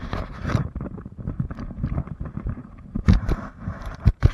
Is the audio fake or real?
fake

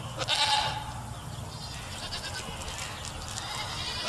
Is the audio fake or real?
real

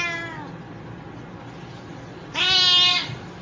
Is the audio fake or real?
real